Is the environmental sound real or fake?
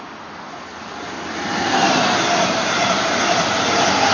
real